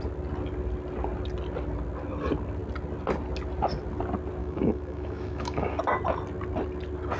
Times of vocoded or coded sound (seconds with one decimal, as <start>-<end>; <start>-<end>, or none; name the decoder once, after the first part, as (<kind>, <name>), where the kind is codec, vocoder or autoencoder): 4.4-5.8 (autoencoder, DAC-VAE)

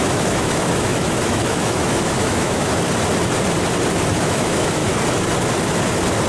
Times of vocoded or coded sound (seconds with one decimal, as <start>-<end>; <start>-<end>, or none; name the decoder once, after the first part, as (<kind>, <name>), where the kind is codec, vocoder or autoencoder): 0.0-2.7 (autoencoder, DAC-VAE); 4.2-4.8

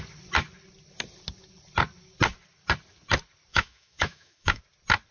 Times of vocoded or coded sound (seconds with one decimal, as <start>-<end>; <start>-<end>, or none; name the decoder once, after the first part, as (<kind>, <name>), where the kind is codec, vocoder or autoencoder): 3.5-4.6 (autoencoder, DAC-VAE)